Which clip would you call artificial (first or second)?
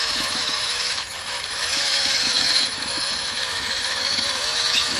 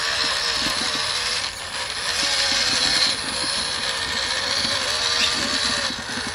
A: first